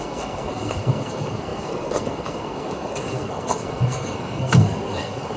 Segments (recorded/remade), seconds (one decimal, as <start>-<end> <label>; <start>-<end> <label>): 0.0-5.4 remade